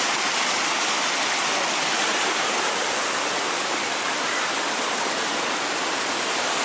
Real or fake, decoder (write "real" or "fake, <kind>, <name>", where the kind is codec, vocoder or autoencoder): real